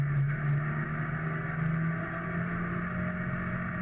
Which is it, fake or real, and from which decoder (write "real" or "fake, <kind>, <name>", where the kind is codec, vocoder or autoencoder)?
real